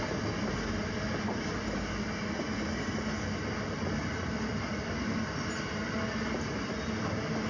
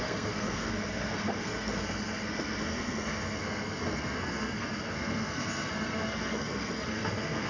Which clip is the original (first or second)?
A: first